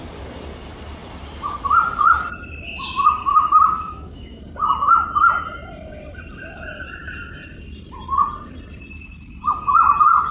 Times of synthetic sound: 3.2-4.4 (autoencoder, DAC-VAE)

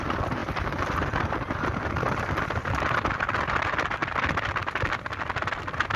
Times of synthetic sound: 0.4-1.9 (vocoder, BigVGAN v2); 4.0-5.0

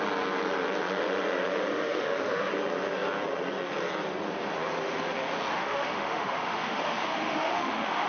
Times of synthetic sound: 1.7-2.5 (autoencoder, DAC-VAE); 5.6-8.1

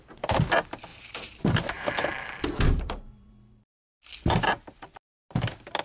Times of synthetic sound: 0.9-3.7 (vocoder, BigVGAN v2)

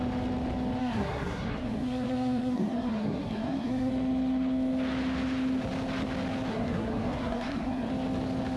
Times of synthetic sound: 0.8-3.9 (codec, SNAC); 6.5-7.9